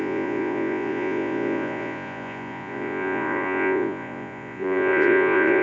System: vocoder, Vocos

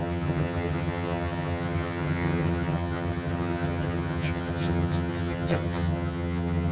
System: vocoder, HiFi-GAN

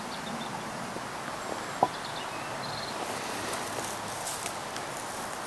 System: none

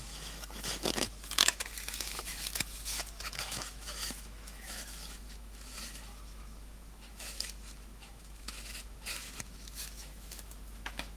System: autoencoder, DAC-VAE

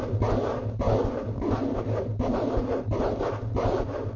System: none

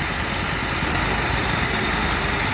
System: none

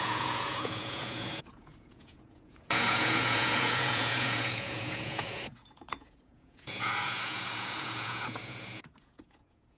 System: vocoder, Vocos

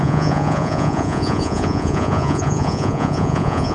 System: vocoder, Vocos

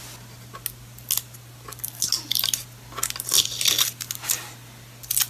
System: none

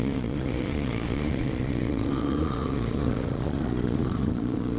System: vocoder, Vocos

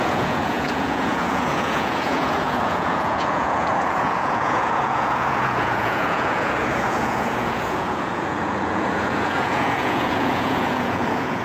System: vocoder, Vocos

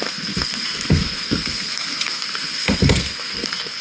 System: codec, SNAC